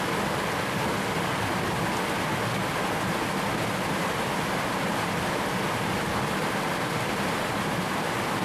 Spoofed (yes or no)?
no